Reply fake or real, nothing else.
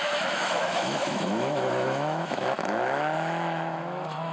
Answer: fake